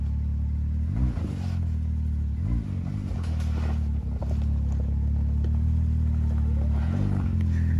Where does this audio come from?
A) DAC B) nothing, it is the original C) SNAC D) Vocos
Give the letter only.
B